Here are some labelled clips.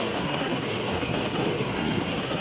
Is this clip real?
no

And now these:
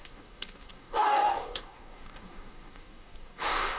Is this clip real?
no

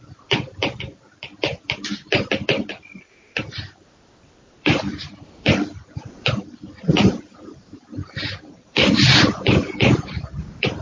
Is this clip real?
no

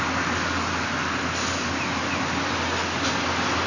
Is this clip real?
yes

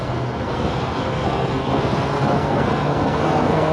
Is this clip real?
no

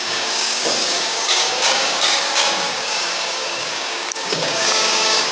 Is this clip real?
no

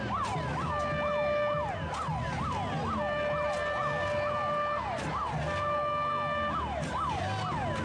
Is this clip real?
yes